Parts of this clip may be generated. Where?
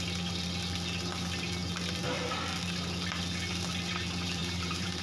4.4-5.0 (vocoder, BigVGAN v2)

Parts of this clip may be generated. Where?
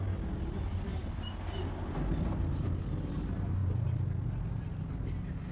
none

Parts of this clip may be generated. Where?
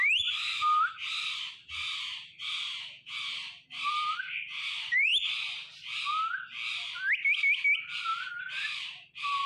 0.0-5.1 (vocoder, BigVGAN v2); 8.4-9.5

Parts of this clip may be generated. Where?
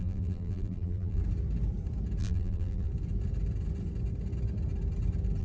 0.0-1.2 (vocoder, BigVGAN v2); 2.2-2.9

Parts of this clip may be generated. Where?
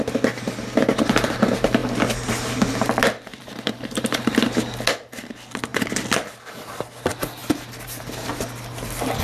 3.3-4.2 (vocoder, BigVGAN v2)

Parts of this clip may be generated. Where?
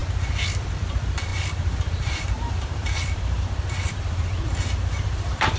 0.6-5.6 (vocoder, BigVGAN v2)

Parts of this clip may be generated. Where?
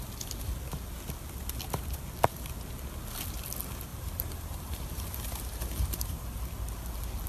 3.9-6.4 (vocoder, BigVGAN v2)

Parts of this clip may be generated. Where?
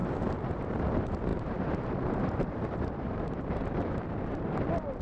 0.0-0.8 (vocoder, BigVGAN v2); 1.3-4.1